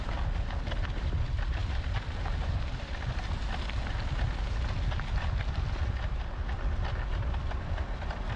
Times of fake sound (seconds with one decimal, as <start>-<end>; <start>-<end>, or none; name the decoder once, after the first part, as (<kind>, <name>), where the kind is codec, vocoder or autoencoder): none